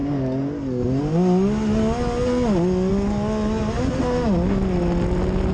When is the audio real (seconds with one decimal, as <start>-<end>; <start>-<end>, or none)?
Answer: 0.0-5.5